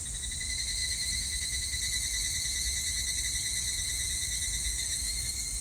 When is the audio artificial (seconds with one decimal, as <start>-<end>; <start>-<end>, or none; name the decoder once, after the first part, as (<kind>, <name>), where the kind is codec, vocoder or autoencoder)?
4.7-5.6 (codec, DAC)

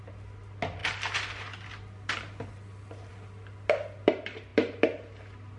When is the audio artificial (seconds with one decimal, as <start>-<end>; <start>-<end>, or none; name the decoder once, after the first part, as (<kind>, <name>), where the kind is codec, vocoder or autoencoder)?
none

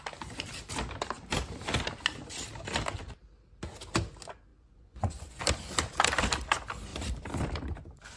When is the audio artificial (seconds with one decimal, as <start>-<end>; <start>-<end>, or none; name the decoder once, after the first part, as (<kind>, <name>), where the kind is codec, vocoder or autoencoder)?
4.5-5.4 (vocoder, Vocos)

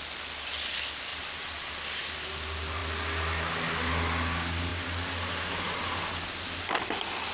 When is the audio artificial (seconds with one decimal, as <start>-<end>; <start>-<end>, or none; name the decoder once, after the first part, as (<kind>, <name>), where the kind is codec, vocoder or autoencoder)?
1.1-1.7 (vocoder, BigVGAN v2)

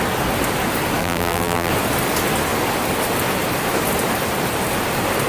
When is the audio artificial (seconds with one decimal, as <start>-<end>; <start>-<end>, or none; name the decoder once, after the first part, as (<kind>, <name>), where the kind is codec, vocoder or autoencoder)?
1.0-1.7 (vocoder, BigVGAN v2)